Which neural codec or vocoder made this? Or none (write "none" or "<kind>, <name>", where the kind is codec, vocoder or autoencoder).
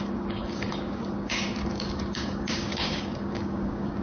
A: codec, DAC